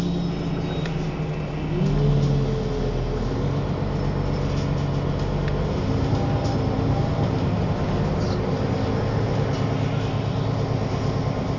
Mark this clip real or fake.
real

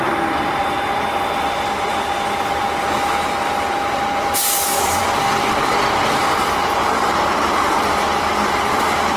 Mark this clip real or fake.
fake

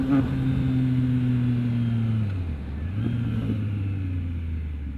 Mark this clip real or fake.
real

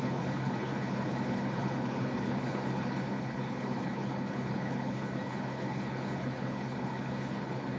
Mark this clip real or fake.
fake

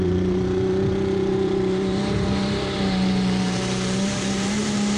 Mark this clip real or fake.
fake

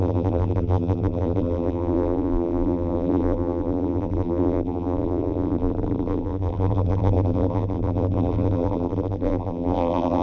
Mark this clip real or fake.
fake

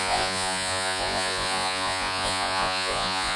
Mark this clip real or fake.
fake